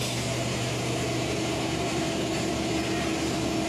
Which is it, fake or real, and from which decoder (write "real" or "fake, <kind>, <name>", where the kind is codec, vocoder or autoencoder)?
real